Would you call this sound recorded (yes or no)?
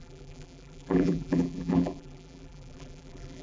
no